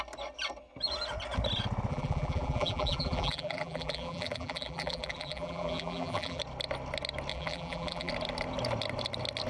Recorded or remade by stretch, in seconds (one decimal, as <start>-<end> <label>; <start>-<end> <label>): 0.0-1.9 recorded; 1.9-6.4 remade; 6.4-7.3 recorded; 7.3-8.1 remade; 8.1-9.5 recorded